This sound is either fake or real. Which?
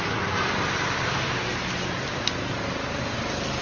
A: real